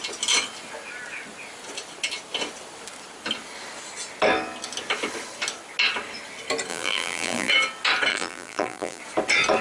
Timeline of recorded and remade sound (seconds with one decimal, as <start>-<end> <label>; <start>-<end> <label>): 0.0-6.7 recorded; 6.7-7.5 remade; 7.5-8.1 recorded; 8.1-9.0 remade; 9.0-9.6 recorded